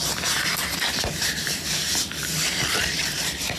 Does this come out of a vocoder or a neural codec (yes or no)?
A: yes